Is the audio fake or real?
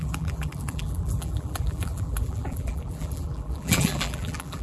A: fake